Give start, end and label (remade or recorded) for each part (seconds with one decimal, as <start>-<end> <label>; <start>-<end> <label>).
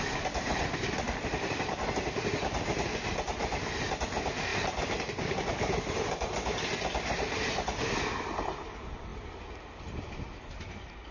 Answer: 0.0-4.5 recorded; 4.5-5.3 remade; 5.3-11.1 recorded